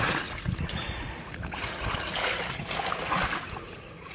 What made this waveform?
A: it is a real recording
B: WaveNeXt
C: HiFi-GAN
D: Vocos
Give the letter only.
D